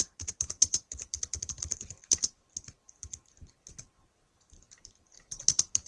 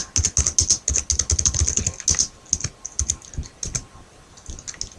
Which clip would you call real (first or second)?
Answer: second